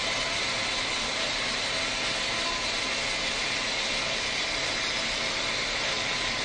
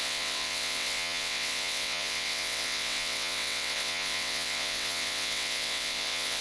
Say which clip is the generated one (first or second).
second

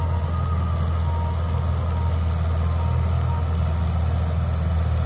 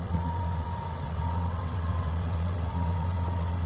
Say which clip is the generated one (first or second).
second